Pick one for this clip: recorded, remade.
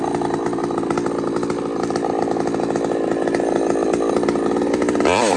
recorded